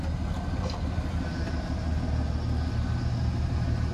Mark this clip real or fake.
real